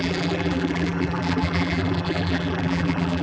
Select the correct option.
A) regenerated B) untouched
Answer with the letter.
A